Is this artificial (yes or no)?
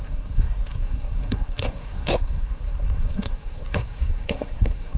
yes